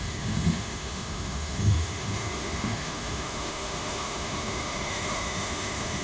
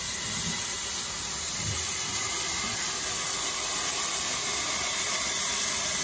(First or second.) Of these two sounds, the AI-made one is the first